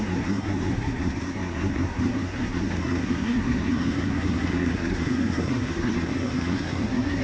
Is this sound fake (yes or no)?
yes